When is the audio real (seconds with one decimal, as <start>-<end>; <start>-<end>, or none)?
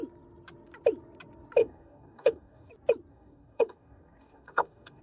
0.0-1.6; 2.7-3.1